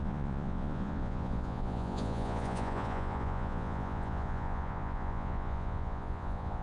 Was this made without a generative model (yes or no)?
no